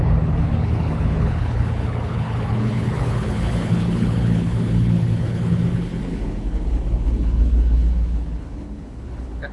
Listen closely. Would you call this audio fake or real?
fake